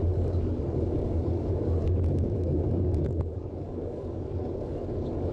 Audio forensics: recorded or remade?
remade